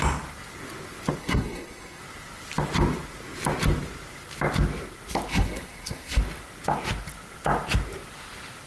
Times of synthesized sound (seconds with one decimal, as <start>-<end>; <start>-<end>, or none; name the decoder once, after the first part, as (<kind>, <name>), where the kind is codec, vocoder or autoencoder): 1.2-2.0 (codec, SNAC); 5.3-6.2